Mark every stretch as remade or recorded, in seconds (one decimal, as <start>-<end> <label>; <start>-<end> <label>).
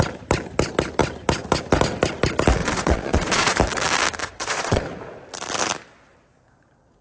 0.0-2.6 recorded; 2.6-3.6 remade; 3.6-4.2 recorded; 4.2-4.8 remade; 4.8-7.0 recorded